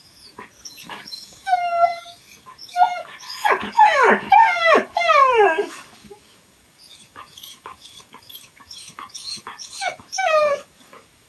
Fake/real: fake